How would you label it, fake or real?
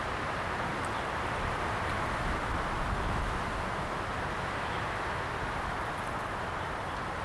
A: real